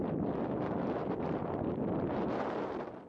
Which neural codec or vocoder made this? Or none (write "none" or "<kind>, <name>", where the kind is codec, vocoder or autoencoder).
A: none